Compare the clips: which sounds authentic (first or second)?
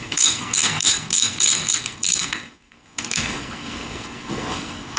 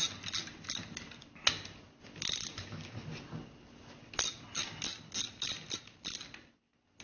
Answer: second